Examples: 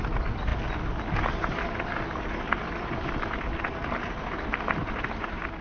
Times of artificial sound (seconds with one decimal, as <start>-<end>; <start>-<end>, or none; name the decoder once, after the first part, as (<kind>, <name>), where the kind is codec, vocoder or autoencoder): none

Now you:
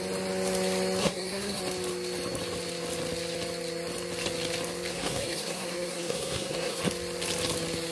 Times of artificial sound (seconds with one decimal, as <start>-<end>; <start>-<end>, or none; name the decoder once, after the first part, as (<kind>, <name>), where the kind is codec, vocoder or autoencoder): 1.0-1.6 (codec, SNAC); 4.9-6.8

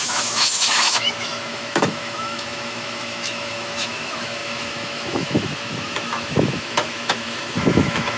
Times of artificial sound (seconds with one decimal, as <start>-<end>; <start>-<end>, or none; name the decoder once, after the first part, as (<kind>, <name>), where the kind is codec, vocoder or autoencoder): 0.0-8.2 (autoencoder, DAC-VAE)